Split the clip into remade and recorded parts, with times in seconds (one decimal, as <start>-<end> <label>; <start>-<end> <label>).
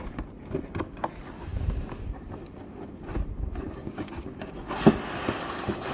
0.0-3.8 recorded; 3.8-4.5 remade; 4.5-5.9 recorded